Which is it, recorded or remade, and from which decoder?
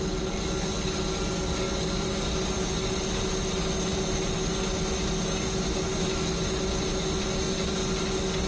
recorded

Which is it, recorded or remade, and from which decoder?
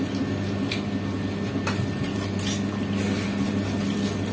recorded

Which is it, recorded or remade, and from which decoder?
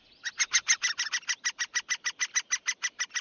recorded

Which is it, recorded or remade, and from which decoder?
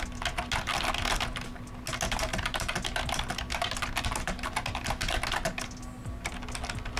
recorded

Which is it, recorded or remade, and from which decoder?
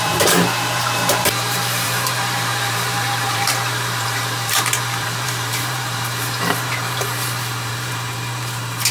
remade, vocoder, BigVGAN v2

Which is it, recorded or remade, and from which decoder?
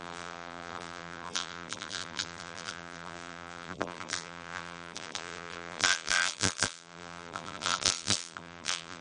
remade, vocoder, BigVGAN v2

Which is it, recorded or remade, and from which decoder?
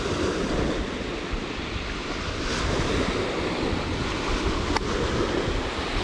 recorded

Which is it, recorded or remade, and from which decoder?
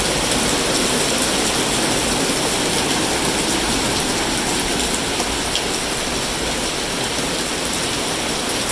recorded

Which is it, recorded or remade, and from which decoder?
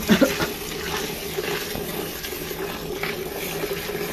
recorded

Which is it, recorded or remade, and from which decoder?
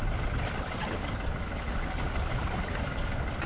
remade, vocoder, BigVGAN v2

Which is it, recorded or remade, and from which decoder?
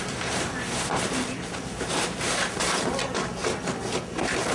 recorded